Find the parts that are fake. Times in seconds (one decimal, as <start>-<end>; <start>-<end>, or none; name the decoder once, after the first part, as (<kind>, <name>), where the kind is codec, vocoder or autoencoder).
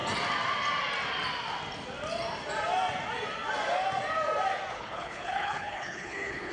4.7-6.5 (codec, HILCodec)